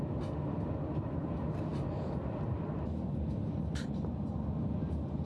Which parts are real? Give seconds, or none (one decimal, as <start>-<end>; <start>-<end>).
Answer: 0.0-5.3